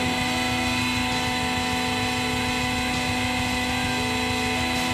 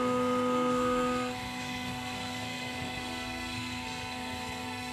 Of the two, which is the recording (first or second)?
first